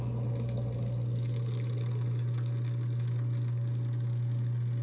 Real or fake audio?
real